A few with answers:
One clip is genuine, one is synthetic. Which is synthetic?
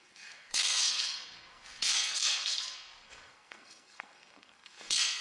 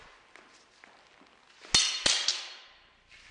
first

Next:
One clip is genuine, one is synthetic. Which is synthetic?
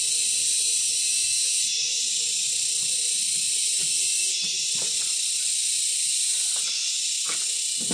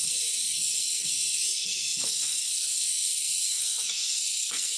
second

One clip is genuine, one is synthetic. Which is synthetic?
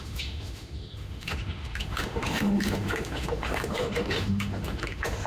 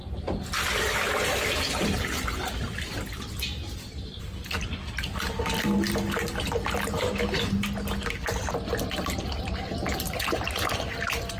first